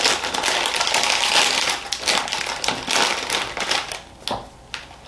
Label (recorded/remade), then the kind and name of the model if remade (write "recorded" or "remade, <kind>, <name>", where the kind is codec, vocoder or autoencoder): recorded